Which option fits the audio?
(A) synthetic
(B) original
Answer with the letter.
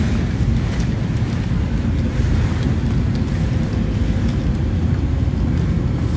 B